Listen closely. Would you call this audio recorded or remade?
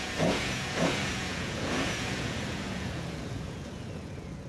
remade